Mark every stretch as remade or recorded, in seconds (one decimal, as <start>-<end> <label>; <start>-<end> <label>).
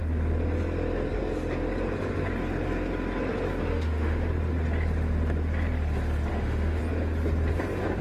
0.0-3.7 recorded; 3.7-4.3 remade; 4.3-6.3 recorded; 6.3-6.8 remade; 6.8-8.0 recorded